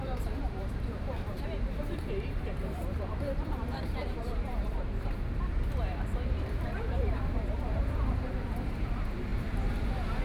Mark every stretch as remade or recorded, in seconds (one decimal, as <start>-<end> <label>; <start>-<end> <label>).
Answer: 0.0-10.2 remade